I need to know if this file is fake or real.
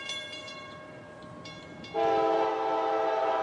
fake